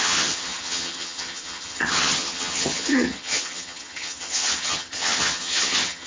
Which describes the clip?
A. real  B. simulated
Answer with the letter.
B